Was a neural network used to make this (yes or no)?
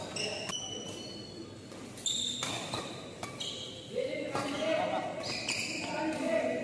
no